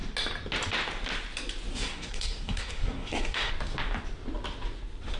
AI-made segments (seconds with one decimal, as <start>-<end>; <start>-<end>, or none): 1.7-3.5